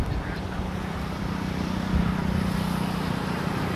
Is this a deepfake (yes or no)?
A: yes